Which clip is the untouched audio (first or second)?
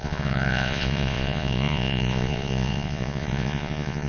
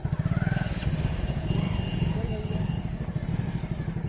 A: second